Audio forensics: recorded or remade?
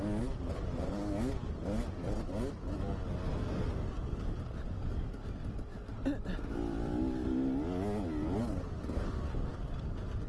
recorded